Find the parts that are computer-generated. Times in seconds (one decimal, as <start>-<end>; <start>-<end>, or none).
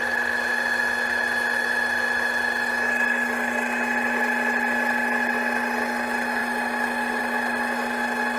none